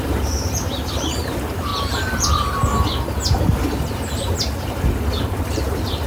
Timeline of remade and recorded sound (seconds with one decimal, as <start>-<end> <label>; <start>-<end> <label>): 0.0-1.7 remade; 1.7-5.4 recorded; 5.4-6.1 remade